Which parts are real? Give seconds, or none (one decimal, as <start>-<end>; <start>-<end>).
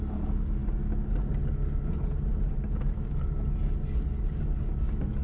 0.0-5.2